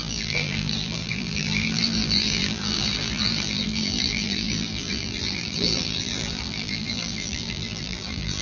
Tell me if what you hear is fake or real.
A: fake